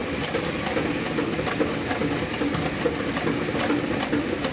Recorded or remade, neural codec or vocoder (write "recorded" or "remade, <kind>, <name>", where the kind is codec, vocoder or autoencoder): recorded